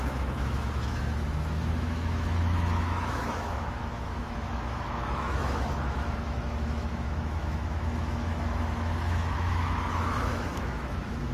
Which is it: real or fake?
fake